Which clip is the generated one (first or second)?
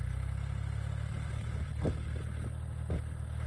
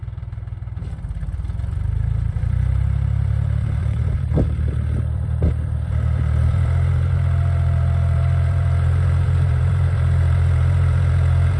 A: second